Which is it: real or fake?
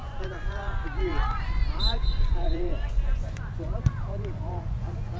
fake